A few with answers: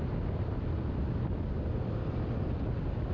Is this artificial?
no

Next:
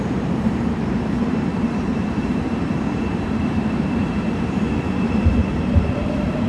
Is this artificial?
yes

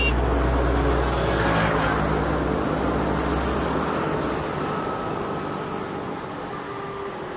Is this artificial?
no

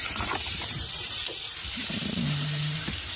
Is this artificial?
yes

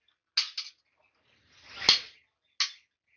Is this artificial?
no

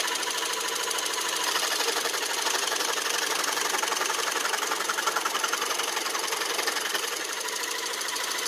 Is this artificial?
yes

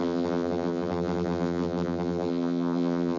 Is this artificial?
yes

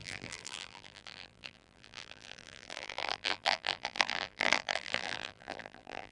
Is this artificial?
yes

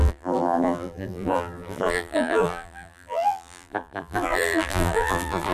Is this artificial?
yes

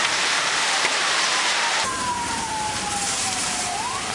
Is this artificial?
yes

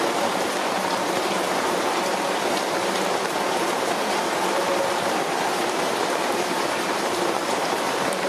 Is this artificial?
yes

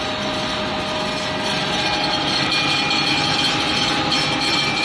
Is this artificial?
no